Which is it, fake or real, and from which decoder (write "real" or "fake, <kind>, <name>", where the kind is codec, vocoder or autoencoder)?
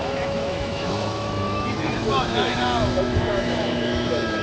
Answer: fake, autoencoder, DAC-VAE